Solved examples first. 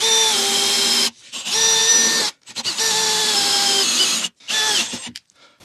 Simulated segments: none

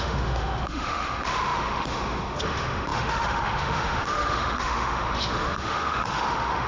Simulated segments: 0.0-6.7 (autoencoder, DAC-VAE)

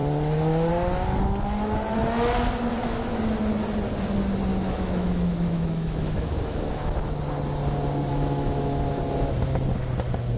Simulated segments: 4.5-7.2 (autoencoder, DAC-VAE); 8.1-8.9

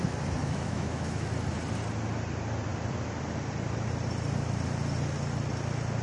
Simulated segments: 0.4-1.3 (autoencoder, DAC-VAE)

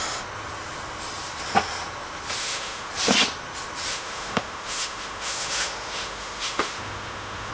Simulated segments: 2.4-2.9 (autoencoder, DAC-VAE); 3.9-7.5

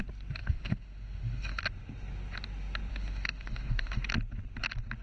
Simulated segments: 0.4-1.6 (autoencoder, DAC-VAE); 2.9-4.0